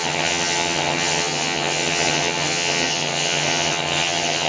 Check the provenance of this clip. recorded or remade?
remade